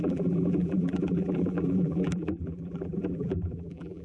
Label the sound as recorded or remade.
remade